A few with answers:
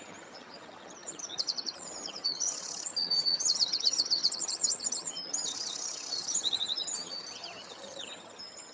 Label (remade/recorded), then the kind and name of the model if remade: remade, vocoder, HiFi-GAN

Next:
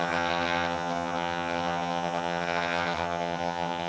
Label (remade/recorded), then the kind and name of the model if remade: remade, vocoder, HiFi-GAN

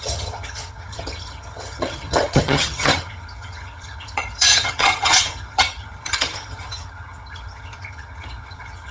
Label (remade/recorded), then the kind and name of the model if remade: remade, vocoder, HiFi-GAN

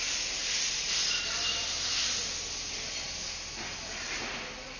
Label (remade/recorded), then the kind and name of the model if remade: recorded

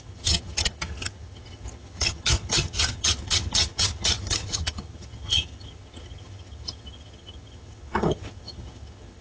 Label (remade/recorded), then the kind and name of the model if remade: remade, vocoder, HiFi-GAN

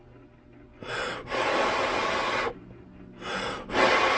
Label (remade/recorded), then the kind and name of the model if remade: recorded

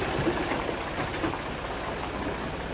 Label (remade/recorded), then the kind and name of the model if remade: recorded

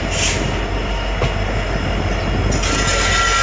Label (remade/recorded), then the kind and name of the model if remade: recorded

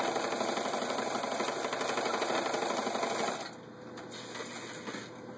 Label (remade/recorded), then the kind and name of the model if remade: recorded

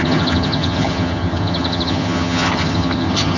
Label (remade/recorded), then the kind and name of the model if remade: remade, vocoder, HiFi-GAN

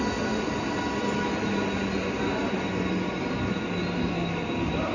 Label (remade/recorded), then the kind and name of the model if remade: recorded